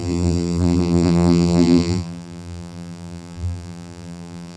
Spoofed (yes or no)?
yes